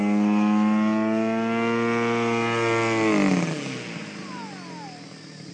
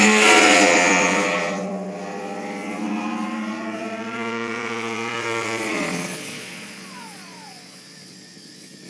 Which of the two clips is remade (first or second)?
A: second